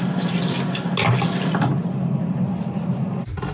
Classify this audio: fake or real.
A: real